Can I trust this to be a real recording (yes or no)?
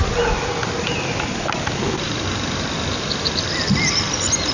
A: yes